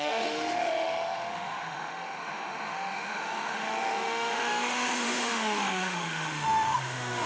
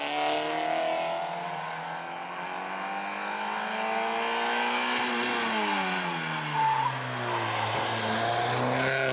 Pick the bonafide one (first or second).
second